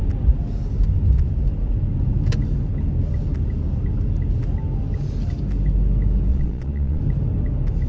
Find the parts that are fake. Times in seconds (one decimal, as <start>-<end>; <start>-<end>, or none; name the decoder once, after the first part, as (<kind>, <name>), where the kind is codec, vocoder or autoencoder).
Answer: 6.3-7.0 (vocoder, Vocos)